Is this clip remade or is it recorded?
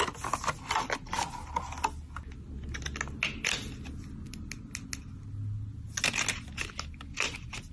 recorded